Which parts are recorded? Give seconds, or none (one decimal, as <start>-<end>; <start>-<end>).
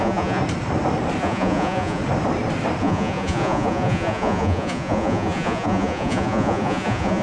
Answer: 0.4-1.2; 2.0-2.8